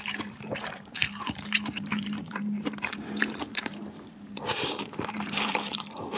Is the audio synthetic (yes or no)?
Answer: yes